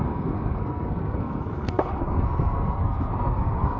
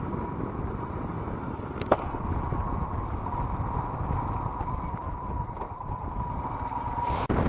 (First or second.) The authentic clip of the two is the second